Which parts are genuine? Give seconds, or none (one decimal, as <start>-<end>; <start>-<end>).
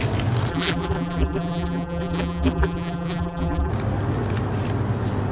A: 0.0-0.5; 3.7-5.3